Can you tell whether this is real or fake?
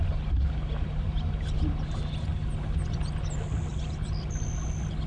real